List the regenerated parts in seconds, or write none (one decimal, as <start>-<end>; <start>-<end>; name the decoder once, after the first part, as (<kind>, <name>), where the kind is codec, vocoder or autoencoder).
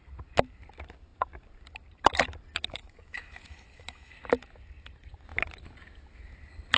2.8-4.1 (autoencoder, DAC-VAE)